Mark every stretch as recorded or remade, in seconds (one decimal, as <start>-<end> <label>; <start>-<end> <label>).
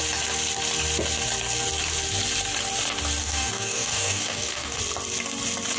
0.0-3.2 recorded; 3.2-4.8 remade; 4.8-5.8 recorded